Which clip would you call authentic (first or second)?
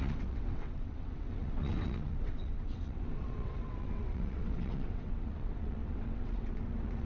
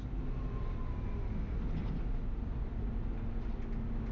second